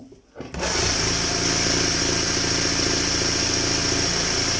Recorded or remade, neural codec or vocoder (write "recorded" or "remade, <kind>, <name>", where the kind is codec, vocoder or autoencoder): recorded